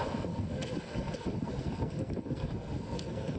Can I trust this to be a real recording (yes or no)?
no